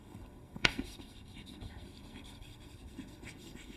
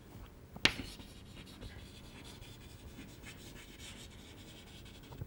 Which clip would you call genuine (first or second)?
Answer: second